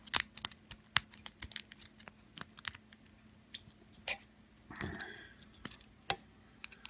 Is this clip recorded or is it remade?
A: recorded